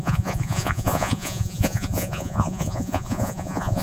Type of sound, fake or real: fake